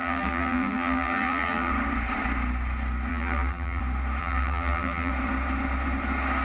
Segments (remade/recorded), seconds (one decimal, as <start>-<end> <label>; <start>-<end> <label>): 0.0-1.7 remade; 1.7-3.1 recorded; 3.1-3.8 remade; 3.8-4.2 recorded; 4.2-5.1 remade; 5.1-6.4 recorded